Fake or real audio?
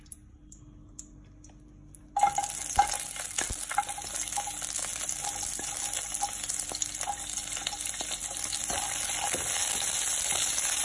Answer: real